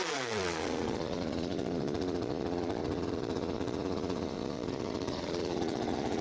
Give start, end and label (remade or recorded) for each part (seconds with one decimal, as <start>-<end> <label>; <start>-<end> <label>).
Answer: 0.0-6.2 remade